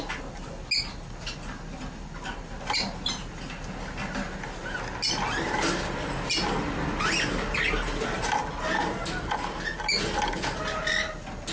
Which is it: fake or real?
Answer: real